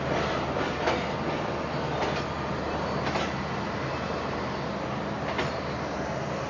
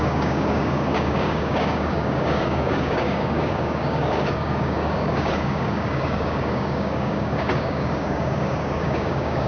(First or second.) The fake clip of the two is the second